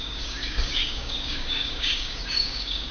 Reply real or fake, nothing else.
fake